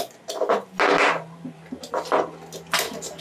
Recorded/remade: recorded